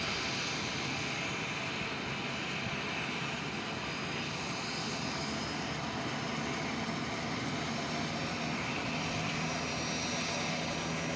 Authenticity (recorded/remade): recorded